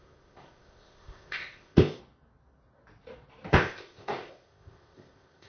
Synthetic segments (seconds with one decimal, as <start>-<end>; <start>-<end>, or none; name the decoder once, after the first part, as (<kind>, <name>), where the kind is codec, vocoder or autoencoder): 0.0-2.0 (codec, ZipCodec); 3.5-5.5